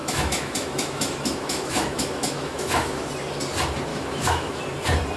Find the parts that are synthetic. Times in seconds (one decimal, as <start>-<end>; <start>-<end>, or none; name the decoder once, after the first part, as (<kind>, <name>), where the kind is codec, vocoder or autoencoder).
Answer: 0.0-3.1 (autoencoder, DAC-VAE); 3.9-4.6